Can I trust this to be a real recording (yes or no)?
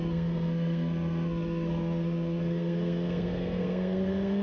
no